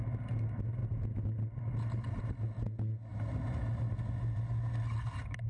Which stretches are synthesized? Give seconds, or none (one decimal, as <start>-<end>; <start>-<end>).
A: none